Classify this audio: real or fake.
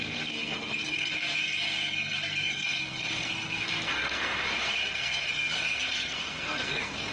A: fake